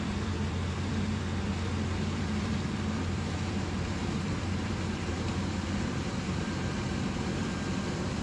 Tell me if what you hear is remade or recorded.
remade